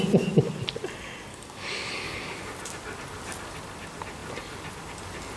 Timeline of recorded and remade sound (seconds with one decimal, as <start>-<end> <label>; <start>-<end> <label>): 0.0-1.3 recorded; 1.3-2.4 remade; 2.4-5.4 recorded